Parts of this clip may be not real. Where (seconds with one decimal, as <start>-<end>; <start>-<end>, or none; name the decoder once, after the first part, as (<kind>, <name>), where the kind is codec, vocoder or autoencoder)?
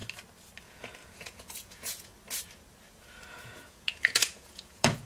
0.6-2.1 (vocoder, Vocos); 3.3-5.1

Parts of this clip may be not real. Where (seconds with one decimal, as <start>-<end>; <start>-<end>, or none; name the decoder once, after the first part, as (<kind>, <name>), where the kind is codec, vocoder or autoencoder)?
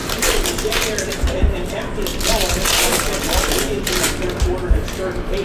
none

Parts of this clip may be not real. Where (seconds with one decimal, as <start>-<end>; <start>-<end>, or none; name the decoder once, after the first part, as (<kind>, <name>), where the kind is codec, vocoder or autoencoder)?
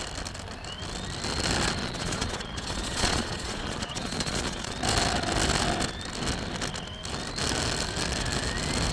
1.8-4.7 (vocoder, Vocos)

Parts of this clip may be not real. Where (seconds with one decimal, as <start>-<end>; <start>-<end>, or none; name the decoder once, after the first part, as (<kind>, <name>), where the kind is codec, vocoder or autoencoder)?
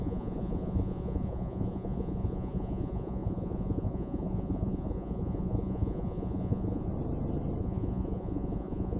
0.0-6.9 (vocoder, Vocos); 7.6-9.0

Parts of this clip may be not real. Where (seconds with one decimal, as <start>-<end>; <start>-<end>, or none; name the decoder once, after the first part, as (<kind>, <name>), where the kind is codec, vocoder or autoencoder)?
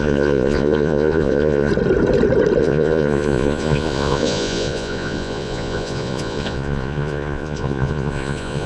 0.0-1.7 (vocoder, Vocos); 2.6-8.7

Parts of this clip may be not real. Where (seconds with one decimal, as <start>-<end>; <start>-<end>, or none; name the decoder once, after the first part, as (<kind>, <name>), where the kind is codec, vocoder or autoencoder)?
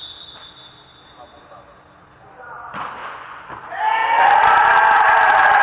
3.0-3.5 (vocoder, Vocos)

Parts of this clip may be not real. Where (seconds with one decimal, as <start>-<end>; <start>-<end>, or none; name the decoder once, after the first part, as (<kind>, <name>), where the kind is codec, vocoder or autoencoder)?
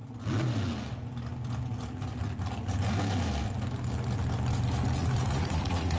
5.0-6.0 (vocoder, Vocos)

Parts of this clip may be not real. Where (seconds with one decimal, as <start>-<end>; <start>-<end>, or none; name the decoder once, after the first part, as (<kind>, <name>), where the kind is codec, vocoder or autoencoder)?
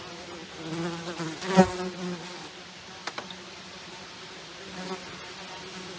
none